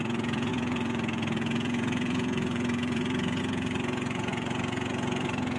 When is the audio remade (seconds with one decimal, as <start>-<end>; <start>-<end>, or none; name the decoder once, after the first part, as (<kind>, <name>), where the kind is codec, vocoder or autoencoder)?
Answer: 0.0-5.6 (vocoder, Vocos)